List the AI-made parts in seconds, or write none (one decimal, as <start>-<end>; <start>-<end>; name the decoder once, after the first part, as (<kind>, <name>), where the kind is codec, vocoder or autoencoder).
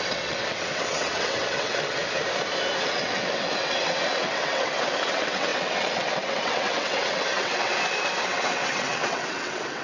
0.0-2.0 (vocoder, WaveNeXt); 2.8-7.7; 8.2-9.8